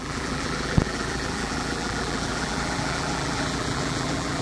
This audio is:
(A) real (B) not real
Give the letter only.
B